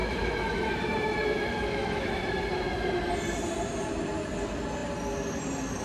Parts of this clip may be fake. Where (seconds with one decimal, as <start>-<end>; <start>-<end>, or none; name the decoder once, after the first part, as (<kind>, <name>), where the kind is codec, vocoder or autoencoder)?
0.0-2.2 (autoencoder, DAC-VAE)